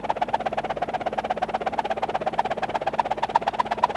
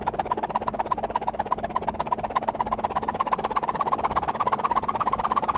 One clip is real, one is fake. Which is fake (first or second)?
second